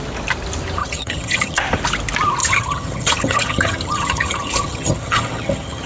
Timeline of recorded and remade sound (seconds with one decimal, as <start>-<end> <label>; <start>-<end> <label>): 0.0-0.8 recorded; 0.8-1.6 remade; 1.6-2.4 recorded; 2.4-5.9 remade